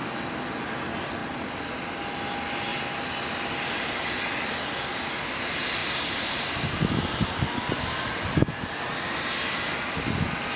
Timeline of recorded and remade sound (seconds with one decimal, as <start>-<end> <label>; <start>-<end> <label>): 0.0-1.2 recorded; 1.2-2.0 remade; 2.0-5.8 recorded; 5.8-7.3 remade; 7.3-10.6 recorded